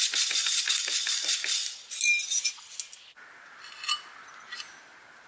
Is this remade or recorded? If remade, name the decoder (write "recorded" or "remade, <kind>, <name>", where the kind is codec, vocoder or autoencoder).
recorded